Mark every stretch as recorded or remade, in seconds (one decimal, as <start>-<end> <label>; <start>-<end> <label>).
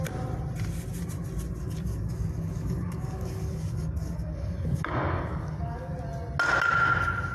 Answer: 0.0-1.6 recorded; 1.6-5.9 remade; 5.9-7.3 recorded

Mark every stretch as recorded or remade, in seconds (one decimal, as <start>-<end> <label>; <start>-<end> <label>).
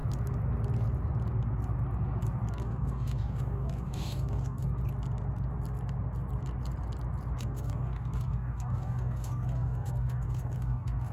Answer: 0.0-2.5 recorded; 2.5-4.8 remade; 4.8-7.4 recorded; 7.4-11.1 remade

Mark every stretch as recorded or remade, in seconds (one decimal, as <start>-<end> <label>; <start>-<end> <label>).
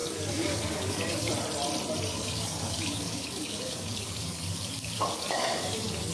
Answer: 0.0-1.3 remade; 1.3-2.1 recorded; 2.1-6.1 remade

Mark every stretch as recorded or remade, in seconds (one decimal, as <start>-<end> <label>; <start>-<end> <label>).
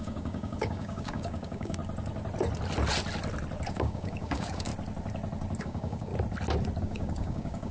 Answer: 0.0-1.8 remade; 1.8-3.7 recorded; 3.7-4.7 remade; 4.7-5.6 recorded; 5.6-6.1 remade; 6.1-6.8 recorded; 6.8-7.7 remade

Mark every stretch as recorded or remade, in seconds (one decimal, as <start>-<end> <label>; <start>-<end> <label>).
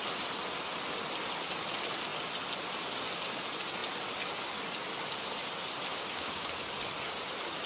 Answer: 0.0-5.9 recorded; 5.9-6.5 remade; 6.5-7.7 recorded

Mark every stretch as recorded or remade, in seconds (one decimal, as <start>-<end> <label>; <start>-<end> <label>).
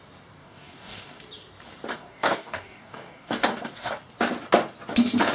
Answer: 0.0-0.4 recorded; 0.4-1.2 remade; 1.2-1.9 recorded; 1.9-3.9 remade; 3.9-5.3 recorded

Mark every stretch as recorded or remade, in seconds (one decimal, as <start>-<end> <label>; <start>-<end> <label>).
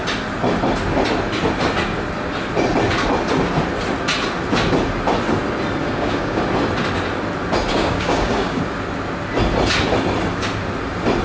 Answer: 0.0-5.8 recorded; 5.8-6.4 remade; 6.4-7.7 recorded; 7.7-8.6 remade; 8.6-11.2 recorded